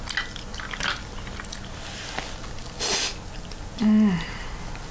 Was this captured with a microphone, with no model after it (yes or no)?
yes